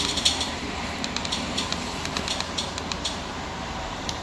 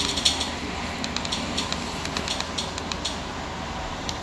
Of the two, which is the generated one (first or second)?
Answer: first